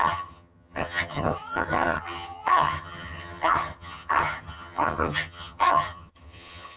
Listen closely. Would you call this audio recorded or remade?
remade